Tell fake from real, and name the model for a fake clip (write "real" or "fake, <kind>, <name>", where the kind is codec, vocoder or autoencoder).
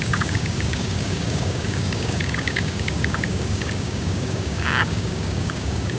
fake, codec, DAC